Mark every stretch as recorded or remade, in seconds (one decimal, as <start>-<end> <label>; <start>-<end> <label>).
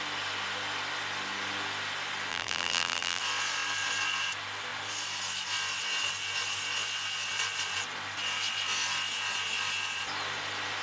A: 0.0-2.3 recorded; 2.3-3.2 remade; 3.2-10.8 recorded